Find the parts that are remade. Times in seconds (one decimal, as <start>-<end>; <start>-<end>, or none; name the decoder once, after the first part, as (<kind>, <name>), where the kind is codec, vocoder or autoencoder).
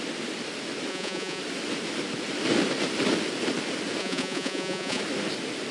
0.9-1.4 (vocoder, Vocos); 4.0-5.0